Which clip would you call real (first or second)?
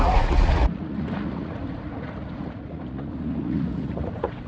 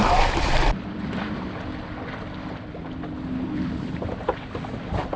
second